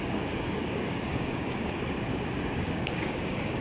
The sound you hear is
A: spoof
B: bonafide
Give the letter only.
A